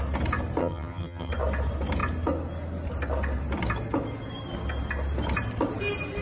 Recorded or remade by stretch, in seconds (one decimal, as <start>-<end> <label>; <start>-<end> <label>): 0.0-0.6 recorded; 0.6-1.3 remade; 1.3-6.2 recorded